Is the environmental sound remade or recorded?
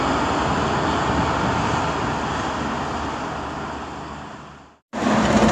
recorded